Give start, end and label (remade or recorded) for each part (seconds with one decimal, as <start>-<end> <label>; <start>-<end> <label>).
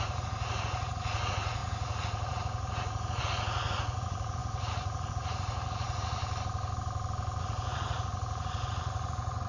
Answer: 0.0-6.2 remade; 6.2-7.4 recorded; 7.4-9.5 remade